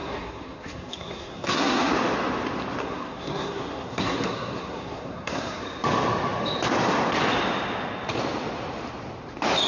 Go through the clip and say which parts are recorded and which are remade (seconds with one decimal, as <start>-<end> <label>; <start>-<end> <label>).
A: 0.0-1.9 remade; 1.9-2.8 recorded; 2.8-5.6 remade; 5.6-9.7 recorded